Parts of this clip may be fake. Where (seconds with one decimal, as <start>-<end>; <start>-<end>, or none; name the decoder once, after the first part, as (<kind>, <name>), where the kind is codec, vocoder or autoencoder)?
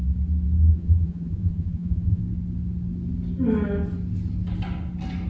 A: 0.7-2.2 (vocoder, Vocos)